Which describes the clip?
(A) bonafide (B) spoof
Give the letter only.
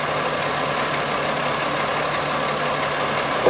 A